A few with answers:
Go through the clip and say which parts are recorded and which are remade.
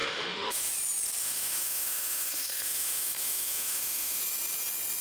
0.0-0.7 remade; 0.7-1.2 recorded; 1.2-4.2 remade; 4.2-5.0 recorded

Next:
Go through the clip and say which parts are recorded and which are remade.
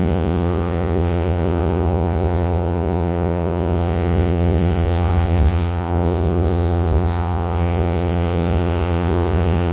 0.0-9.7 remade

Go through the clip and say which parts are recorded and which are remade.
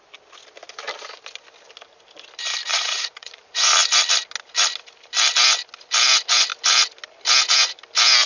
0.0-2.7 recorded; 2.7-3.7 remade; 3.7-8.3 recorded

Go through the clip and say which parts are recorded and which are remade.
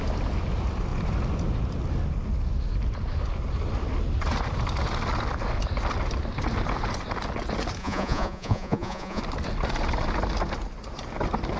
0.0-7.8 recorded; 7.8-9.2 remade; 9.2-11.6 recorded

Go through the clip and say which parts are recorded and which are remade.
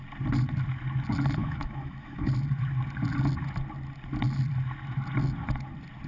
0.0-1.4 recorded; 1.4-2.3 remade; 2.3-6.1 recorded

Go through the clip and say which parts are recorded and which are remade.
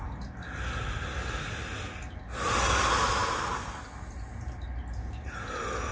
0.0-5.9 recorded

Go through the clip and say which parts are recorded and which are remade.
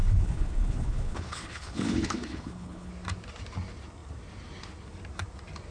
0.0-2.9 remade; 2.9-5.7 recorded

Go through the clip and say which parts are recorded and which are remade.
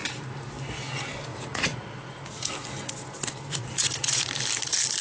0.0-1.3 recorded; 1.3-2.5 remade; 2.5-3.6 recorded; 3.6-4.2 remade; 4.2-5.0 recorded